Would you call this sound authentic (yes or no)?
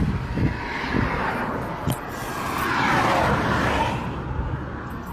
yes